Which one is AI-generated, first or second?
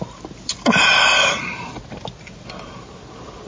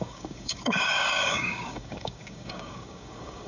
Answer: second